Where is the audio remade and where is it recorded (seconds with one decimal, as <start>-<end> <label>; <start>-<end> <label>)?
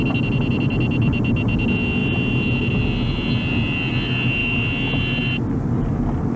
0.0-6.4 recorded